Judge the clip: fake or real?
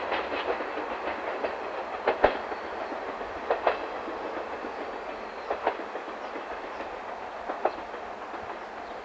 real